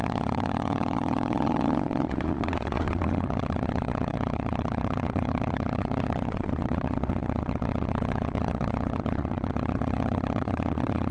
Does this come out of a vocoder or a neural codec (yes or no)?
yes